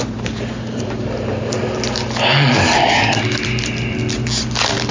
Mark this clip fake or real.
real